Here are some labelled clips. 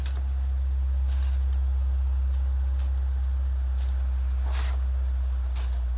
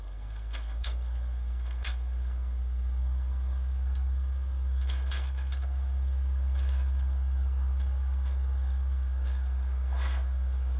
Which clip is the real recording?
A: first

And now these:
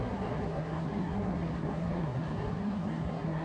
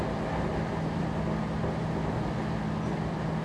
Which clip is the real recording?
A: second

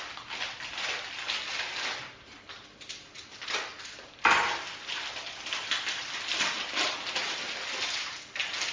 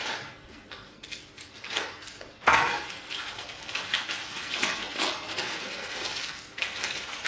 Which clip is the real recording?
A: first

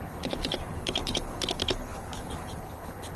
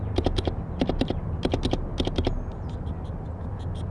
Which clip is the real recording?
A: second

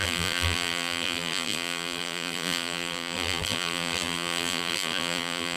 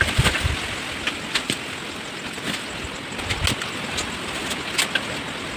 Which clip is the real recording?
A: second